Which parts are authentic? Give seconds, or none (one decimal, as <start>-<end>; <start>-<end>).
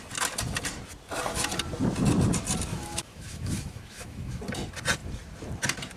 0.0-2.7; 4.4-6.0